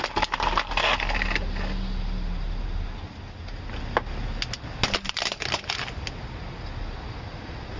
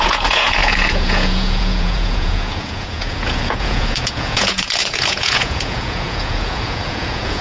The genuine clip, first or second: first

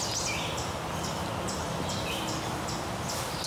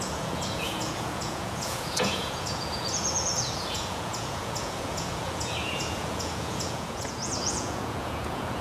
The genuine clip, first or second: first